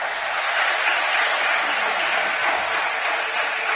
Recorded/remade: recorded